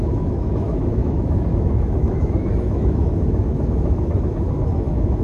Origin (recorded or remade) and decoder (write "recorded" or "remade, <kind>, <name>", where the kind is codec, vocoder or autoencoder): remade, autoencoder, DAC-VAE